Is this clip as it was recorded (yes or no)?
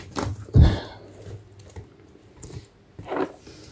yes